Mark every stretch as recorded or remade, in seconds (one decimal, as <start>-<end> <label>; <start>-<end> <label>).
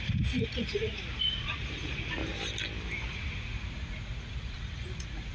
0.0-2.2 remade; 2.2-3.1 recorded; 3.1-5.3 remade